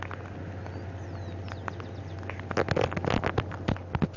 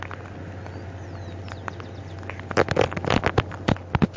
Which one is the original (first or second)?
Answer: first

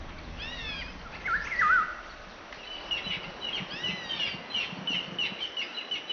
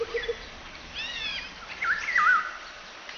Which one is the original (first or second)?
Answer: first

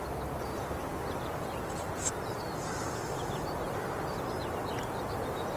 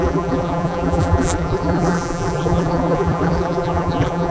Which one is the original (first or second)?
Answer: first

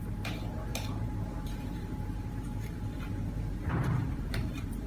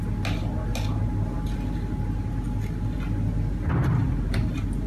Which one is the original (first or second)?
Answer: second